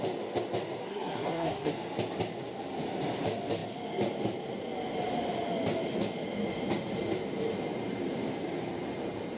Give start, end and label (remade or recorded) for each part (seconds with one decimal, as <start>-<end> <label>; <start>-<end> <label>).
0.0-0.9 recorded; 0.9-1.7 remade; 1.7-9.4 recorded